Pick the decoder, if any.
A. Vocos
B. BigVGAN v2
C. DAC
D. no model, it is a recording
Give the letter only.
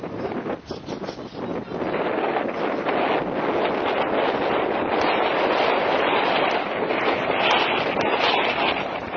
D